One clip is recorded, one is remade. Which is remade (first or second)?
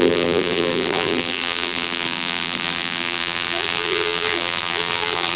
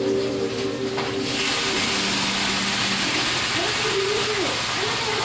first